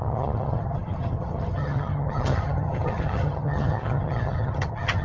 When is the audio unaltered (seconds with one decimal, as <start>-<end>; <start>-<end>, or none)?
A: none

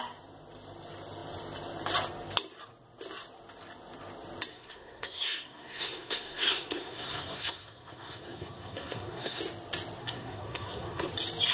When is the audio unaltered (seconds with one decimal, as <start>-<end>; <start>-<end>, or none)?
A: 0.0-4.5; 9.4-10.0; 11.1-11.5

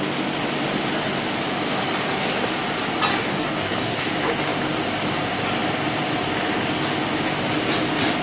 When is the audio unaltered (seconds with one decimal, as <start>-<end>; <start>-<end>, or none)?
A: 0.0-3.1; 4.1-8.2

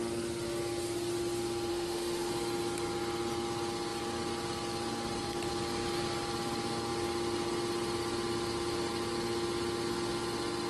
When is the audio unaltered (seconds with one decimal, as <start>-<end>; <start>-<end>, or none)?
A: 0.0-1.7; 2.3-10.7